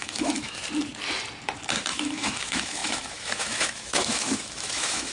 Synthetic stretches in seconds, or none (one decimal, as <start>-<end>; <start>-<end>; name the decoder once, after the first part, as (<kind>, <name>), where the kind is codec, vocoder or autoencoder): 0.0-0.6 (autoencoder, DAC-VAE); 1.9-5.1